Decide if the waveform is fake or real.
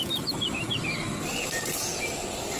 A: fake